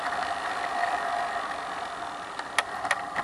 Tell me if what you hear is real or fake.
real